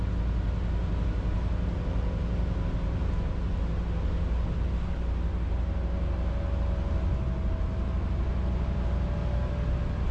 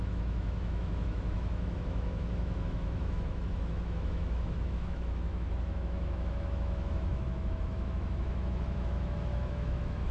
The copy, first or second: second